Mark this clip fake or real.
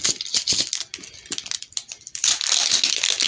real